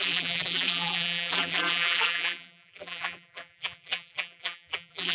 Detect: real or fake fake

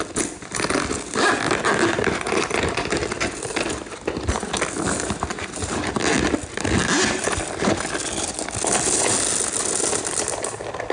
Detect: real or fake real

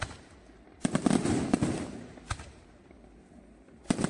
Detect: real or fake real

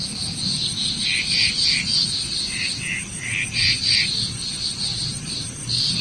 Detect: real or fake fake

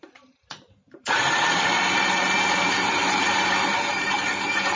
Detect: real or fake fake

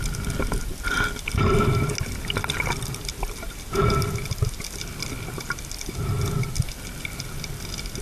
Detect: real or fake real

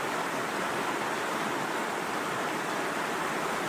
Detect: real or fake real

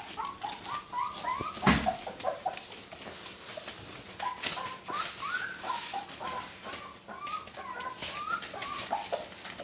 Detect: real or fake real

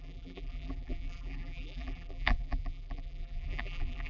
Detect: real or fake fake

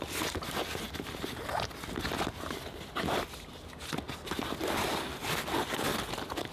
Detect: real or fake real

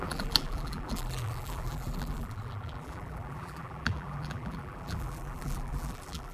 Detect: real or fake fake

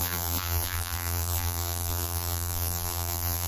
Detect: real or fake fake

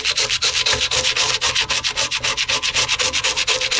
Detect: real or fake real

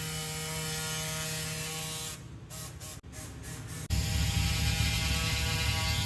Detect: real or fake real